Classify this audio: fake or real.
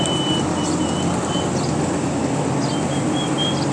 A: real